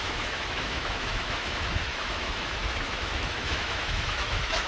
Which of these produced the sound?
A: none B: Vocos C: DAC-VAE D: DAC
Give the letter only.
C